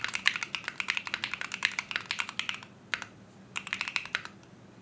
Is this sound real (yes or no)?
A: yes